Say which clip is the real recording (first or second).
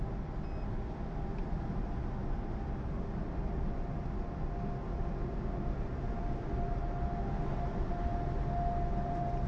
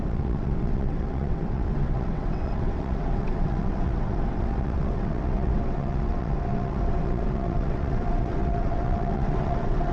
first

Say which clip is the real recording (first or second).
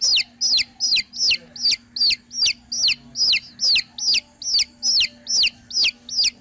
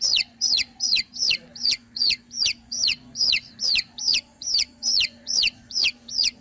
first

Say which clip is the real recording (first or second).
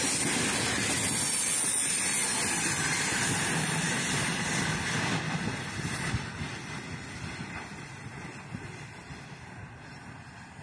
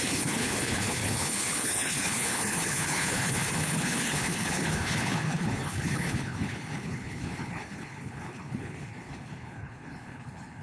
first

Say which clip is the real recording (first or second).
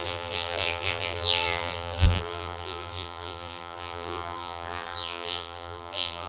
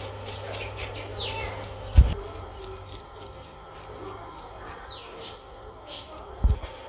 second